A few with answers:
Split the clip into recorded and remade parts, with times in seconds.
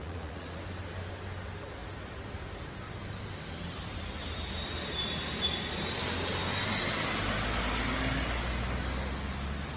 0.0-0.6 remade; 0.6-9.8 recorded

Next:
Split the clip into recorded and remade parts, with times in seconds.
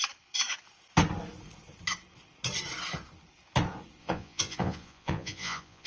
0.0-4.0 recorded; 4.0-5.9 remade